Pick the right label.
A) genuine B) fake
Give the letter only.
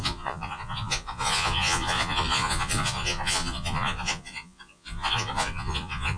B